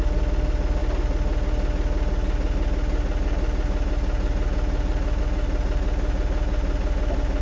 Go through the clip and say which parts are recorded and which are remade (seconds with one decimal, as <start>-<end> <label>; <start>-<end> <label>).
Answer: 0.0-7.4 recorded